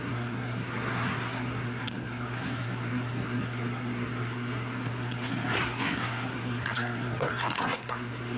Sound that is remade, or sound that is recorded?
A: remade